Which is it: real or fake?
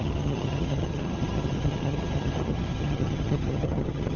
fake